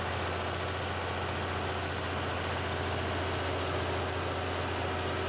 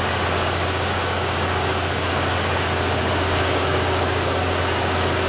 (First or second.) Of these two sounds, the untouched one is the first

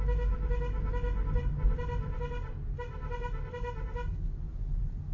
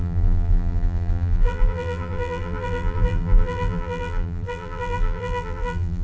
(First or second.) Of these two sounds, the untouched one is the first